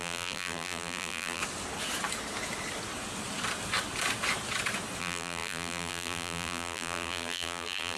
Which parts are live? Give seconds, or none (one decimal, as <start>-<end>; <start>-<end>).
1.4-5.0